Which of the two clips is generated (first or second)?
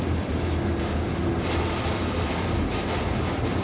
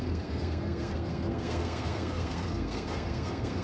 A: second